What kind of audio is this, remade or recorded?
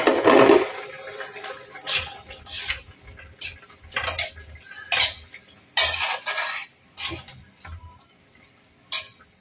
recorded